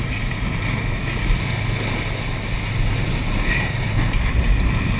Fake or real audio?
real